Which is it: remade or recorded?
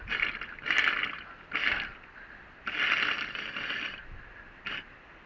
recorded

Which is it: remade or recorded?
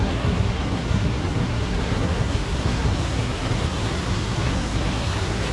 remade